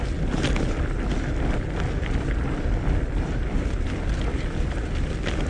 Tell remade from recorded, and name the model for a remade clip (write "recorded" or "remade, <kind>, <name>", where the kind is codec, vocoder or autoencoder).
recorded